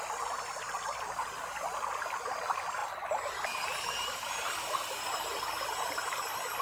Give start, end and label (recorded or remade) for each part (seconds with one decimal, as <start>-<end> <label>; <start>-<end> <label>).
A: 0.0-0.9 recorded; 0.9-2.0 remade; 2.0-2.8 recorded; 2.8-6.1 remade; 6.1-6.6 recorded